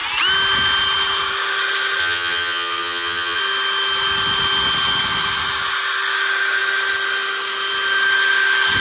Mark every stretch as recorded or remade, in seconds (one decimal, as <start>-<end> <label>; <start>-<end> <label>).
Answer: 0.0-2.0 recorded; 2.0-3.4 remade; 3.4-8.8 recorded

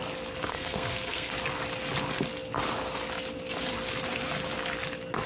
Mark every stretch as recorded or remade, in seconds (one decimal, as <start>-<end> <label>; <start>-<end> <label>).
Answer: 0.0-0.5 recorded; 0.5-1.3 remade; 1.3-5.3 recorded

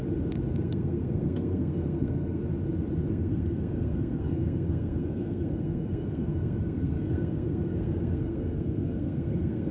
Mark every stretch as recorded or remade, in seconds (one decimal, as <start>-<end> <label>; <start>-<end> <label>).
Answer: 0.0-0.6 recorded; 0.6-2.4 remade; 2.4-3.1 recorded; 3.1-9.7 remade

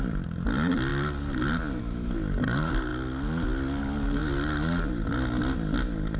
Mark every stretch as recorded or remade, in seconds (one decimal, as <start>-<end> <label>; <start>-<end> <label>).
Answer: 0.0-6.2 recorded

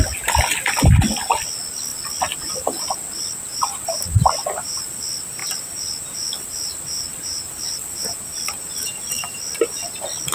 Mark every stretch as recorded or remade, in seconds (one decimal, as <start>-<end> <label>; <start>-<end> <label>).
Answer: 0.0-3.5 recorded; 3.5-4.8 remade; 4.8-5.4 recorded; 5.4-9.8 remade; 9.8-10.3 recorded